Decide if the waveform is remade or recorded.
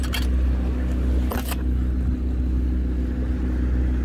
recorded